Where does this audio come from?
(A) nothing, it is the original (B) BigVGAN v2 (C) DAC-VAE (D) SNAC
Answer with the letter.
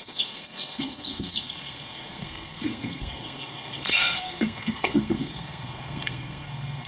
D